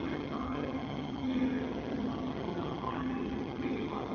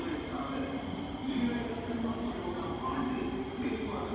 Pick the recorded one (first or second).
second